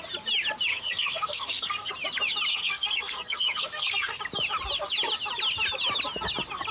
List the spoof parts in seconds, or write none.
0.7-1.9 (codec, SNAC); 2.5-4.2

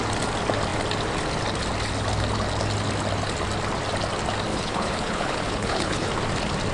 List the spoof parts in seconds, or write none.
4.5-6.1 (codec, HILCodec)

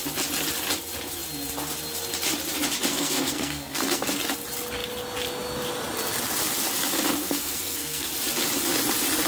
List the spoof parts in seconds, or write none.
2.9-4.2 (codec, SNAC); 7.2-8.1